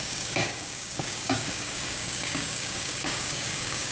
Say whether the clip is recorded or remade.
remade